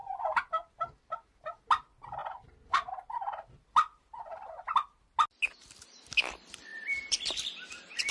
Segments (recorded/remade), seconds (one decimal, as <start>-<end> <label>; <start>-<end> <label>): 0.0-0.7 remade; 0.7-2.2 recorded; 2.2-2.9 remade; 2.9-6.7 recorded; 6.7-8.1 remade